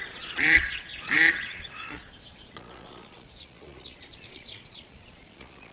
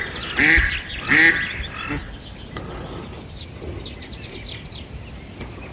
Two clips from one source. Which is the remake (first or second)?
first